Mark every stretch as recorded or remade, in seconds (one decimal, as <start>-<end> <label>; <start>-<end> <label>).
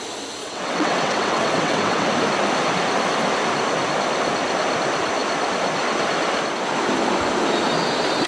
0.0-0.4 recorded; 0.4-2.1 remade; 2.1-8.3 recorded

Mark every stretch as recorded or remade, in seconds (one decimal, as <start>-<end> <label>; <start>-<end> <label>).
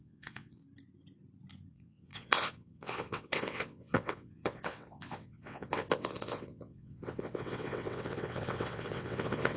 0.0-0.6 remade; 0.6-1.7 recorded; 1.7-9.6 remade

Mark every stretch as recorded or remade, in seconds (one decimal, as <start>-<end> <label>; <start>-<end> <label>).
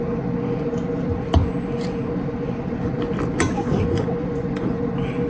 0.0-5.3 recorded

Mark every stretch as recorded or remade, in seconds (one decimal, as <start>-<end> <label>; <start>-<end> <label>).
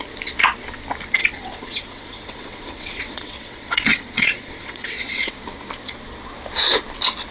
0.0-1.2 recorded; 1.2-5.3 remade; 5.3-7.3 recorded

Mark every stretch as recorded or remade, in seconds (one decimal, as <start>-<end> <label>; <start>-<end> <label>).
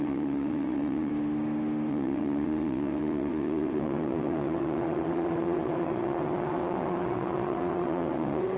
0.0-1.1 remade; 1.1-1.9 recorded; 1.9-8.6 remade